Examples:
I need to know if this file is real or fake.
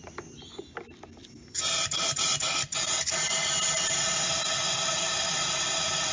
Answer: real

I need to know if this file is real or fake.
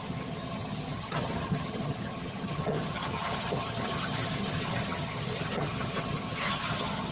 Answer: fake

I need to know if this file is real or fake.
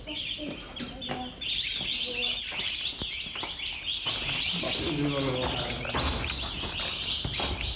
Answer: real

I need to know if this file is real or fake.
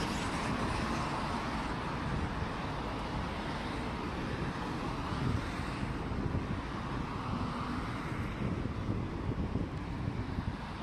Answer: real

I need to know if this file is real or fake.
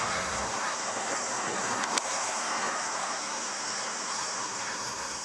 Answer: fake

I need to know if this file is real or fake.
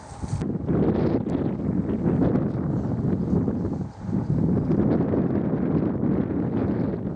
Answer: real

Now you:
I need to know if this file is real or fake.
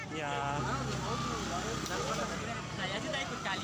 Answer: real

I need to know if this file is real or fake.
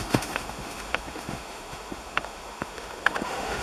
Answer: fake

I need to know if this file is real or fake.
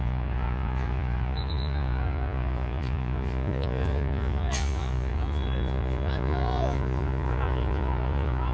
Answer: fake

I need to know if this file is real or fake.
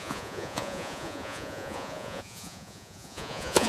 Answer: fake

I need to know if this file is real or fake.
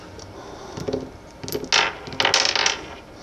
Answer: real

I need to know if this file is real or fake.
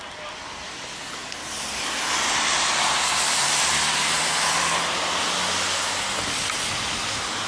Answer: real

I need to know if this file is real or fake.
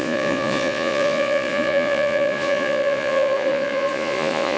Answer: fake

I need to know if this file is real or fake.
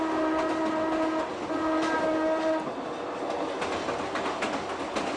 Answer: real